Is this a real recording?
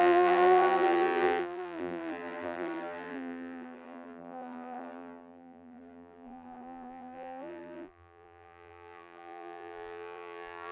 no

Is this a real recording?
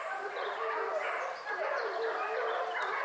yes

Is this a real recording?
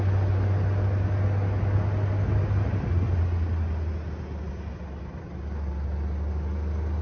yes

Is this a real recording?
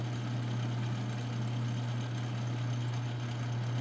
yes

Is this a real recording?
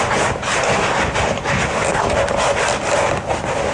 yes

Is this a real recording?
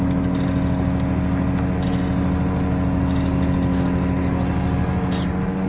yes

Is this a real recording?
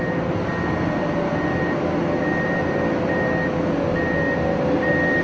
yes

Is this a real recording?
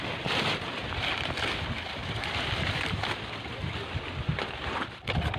no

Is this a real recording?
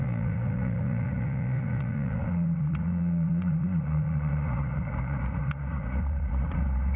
no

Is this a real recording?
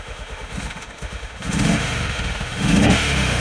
no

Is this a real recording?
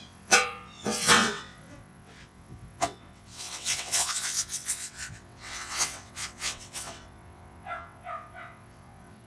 no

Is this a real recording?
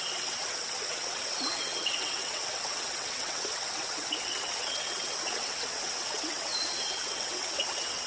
no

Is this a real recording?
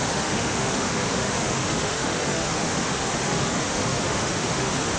no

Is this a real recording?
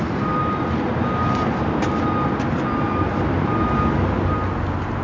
yes